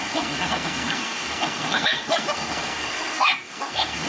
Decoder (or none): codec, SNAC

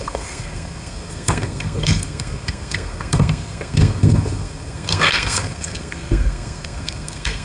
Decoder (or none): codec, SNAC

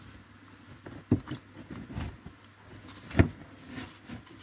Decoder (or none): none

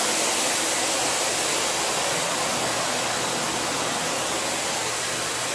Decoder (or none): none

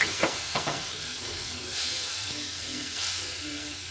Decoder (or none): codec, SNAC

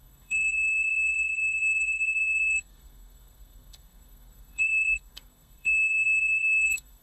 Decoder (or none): codec, SNAC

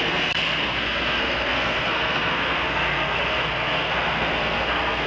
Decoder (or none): codec, SNAC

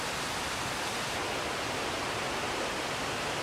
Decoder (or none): none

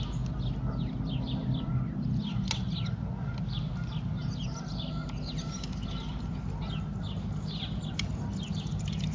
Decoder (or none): none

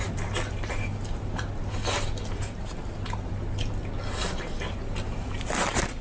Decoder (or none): none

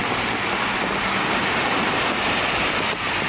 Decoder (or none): none